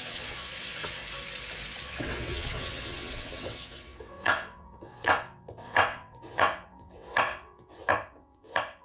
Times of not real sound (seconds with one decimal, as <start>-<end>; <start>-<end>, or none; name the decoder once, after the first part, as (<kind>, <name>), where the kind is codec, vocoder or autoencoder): 0.0-1.0 (vocoder, WaveNeXt); 1.8-8.8